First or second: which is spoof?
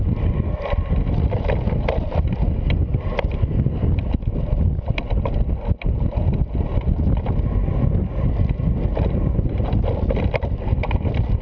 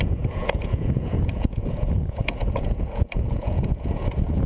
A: second